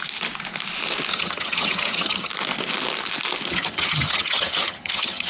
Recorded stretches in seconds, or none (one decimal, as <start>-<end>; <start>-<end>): 0.0-1.1; 2.3-3.5